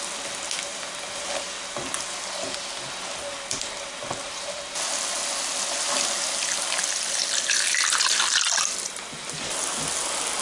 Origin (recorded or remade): recorded